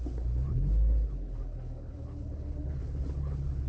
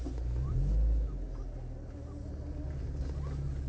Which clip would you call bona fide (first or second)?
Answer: second